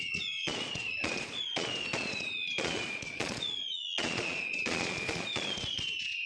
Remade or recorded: remade